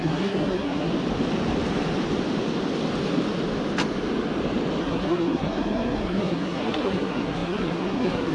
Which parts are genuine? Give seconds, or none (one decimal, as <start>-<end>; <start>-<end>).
0.9-4.8